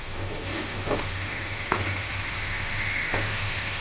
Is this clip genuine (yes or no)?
no